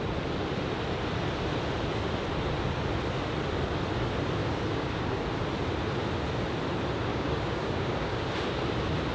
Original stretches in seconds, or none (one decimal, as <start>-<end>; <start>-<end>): 0.0-4.4; 5.2-7.1; 8.3-9.1